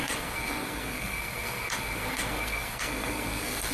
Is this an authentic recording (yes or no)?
no